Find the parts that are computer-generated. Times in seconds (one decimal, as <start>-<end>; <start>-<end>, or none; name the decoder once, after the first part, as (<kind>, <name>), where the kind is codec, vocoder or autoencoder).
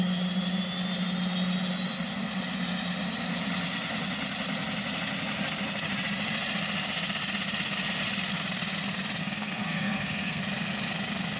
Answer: 9.2-10.4 (codec, SNAC)